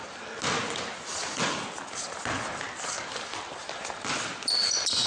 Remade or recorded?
recorded